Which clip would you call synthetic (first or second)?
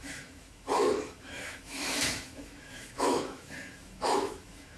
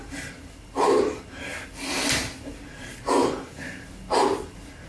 first